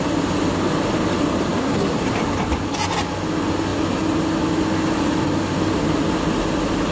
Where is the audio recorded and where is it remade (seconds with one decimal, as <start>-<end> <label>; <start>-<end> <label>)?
0.0-1.6 recorded; 1.6-2.1 remade; 2.1-6.9 recorded